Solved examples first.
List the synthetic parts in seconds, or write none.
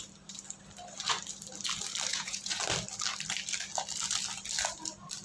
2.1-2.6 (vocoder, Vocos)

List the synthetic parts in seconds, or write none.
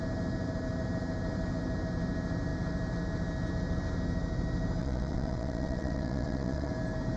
4.8-6.7 (vocoder, WaveNeXt)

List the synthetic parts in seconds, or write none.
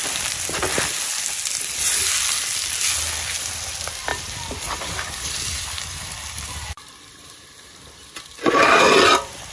3.4-9.5 (vocoder, BigVGAN v2)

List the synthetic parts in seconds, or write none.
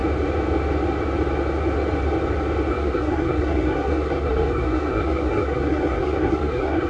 2.7-6.9 (codec, SNAC)